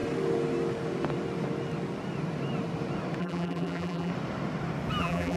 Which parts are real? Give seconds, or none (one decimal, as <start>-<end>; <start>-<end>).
0.0-3.2; 4.1-5.0